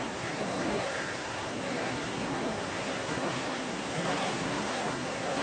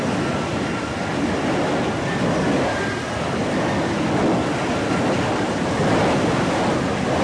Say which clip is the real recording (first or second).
second